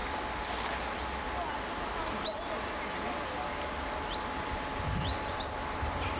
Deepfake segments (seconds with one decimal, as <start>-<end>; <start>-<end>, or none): none